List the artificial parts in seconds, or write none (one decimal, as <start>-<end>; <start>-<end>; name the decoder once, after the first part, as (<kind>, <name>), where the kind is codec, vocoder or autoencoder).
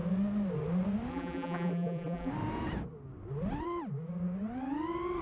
1.1-2.3 (vocoder, BigVGAN v2)